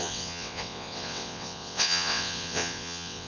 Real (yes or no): no